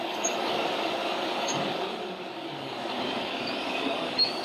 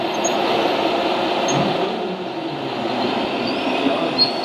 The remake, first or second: first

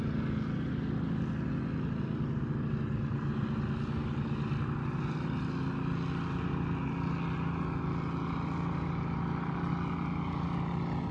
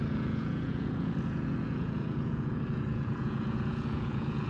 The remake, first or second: second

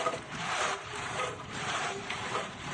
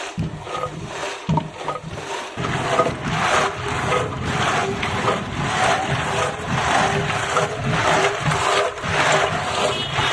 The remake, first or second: first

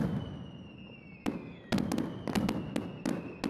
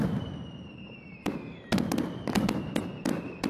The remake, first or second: second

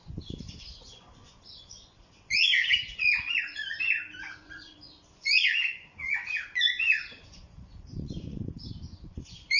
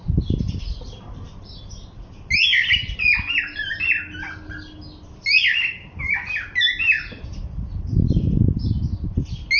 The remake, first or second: first